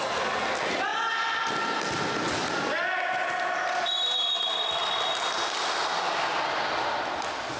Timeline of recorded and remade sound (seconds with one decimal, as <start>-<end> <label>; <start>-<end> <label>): 0.0-7.6 recorded

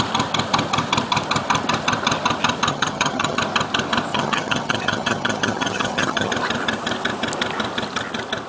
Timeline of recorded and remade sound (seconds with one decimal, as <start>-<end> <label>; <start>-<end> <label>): 0.0-2.7 recorded; 2.7-3.4 remade; 3.4-4.1 recorded; 4.1-6.3 remade; 6.3-8.5 recorded

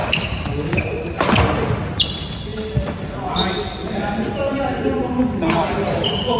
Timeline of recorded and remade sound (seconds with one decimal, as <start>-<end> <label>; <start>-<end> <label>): 0.0-6.4 recorded

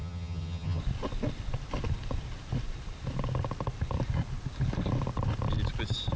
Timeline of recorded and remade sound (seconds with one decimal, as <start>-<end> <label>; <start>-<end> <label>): 0.0-0.8 remade; 0.8-6.2 recorded